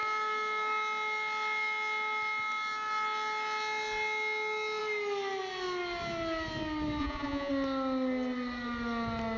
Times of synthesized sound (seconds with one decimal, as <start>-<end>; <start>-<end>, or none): 7.0-7.5